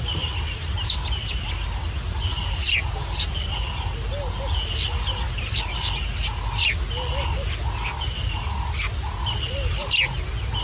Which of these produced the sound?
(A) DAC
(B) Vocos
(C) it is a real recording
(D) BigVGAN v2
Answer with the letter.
C